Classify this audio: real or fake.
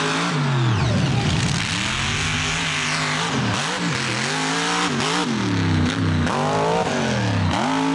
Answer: real